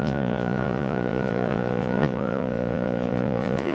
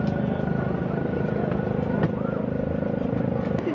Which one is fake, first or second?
first